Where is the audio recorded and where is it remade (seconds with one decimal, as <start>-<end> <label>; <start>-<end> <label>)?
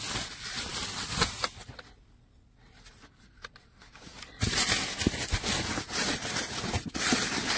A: 0.0-7.6 recorded